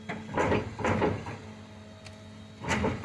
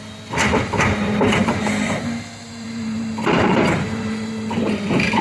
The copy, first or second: second